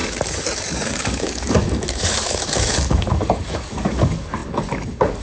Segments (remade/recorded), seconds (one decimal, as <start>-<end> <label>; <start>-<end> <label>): 0.0-5.2 remade